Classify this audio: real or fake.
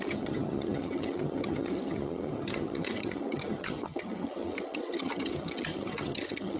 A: fake